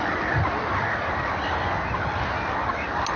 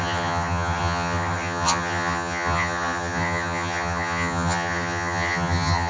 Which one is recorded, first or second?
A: first